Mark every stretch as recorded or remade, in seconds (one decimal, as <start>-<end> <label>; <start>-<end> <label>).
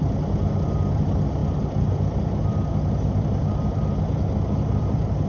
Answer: 0.0-5.3 recorded